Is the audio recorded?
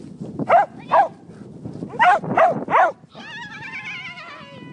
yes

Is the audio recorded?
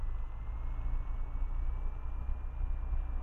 yes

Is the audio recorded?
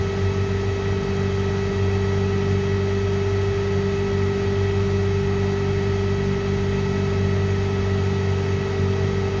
yes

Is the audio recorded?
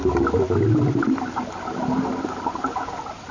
yes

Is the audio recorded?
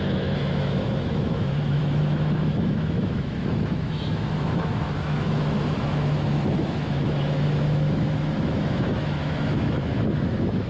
no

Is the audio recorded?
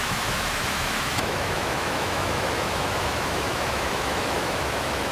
no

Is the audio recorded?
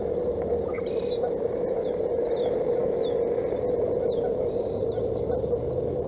yes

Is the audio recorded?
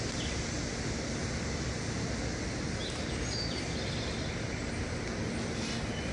yes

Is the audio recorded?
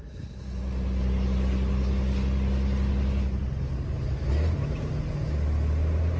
yes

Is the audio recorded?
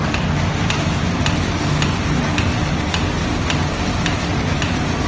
yes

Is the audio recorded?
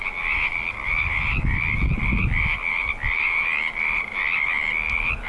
yes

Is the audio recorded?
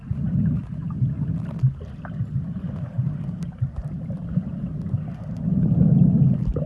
yes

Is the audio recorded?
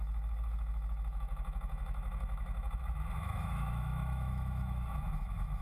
no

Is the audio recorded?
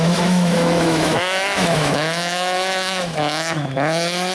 no